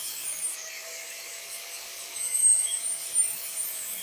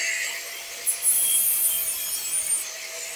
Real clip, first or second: second